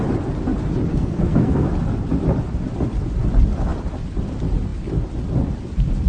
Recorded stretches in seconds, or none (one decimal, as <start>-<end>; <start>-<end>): 0.0-0.9; 1.7-6.1